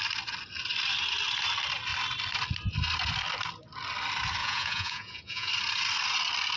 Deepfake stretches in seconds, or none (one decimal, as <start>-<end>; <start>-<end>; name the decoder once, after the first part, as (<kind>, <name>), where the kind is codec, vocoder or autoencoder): 4.4-5.5 (vocoder, Vocos)